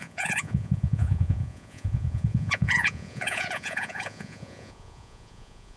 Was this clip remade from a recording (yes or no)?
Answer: yes